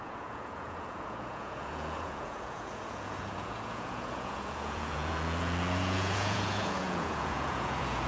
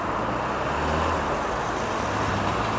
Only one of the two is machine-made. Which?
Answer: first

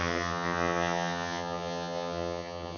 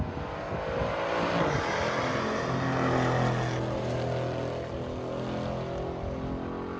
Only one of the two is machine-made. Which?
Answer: first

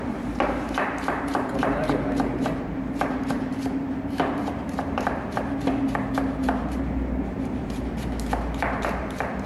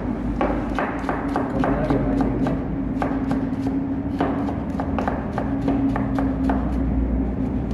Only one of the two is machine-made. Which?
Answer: first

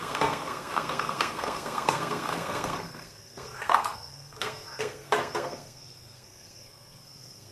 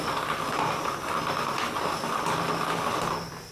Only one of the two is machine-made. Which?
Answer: first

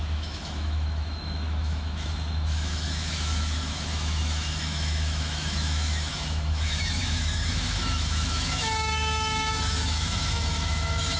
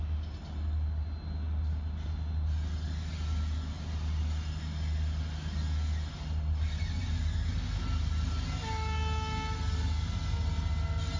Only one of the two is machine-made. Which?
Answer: first